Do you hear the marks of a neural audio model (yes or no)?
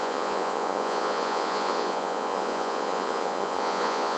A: yes